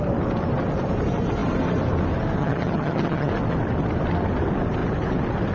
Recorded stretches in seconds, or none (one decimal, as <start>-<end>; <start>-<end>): 0.0-2.4; 3.3-5.5